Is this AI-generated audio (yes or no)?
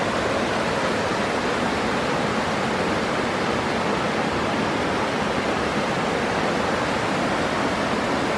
no